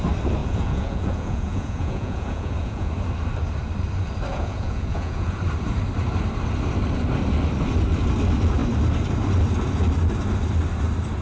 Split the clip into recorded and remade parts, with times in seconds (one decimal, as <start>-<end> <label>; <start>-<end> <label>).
0.0-0.4 recorded; 0.4-2.9 remade; 2.9-4.3 recorded; 4.3-5.4 remade; 5.4-11.2 recorded